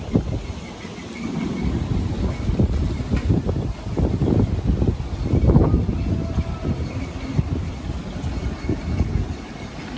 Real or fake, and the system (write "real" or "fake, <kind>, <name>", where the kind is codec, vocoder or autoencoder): real